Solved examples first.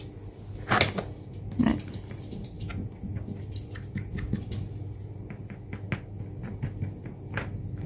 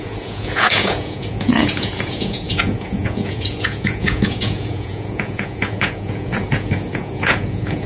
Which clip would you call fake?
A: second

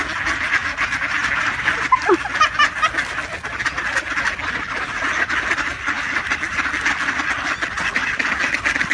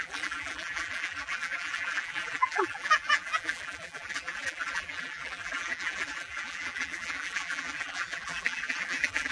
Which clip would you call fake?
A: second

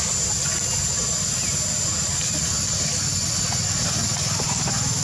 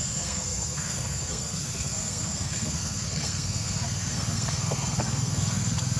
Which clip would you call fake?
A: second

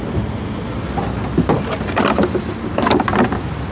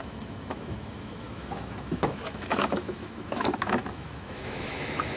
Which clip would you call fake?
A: second